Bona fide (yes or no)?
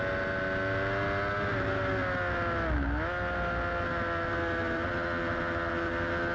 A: yes